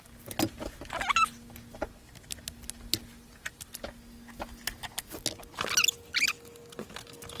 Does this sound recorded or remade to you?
recorded